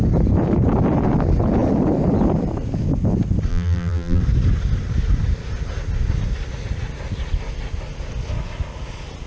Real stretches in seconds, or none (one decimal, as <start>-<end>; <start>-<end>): 0.0-3.5; 4.2-9.3